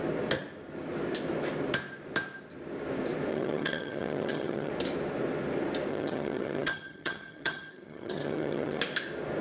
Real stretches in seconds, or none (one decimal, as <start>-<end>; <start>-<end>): 0.0-3.3; 4.7-5.9; 8.8-9.4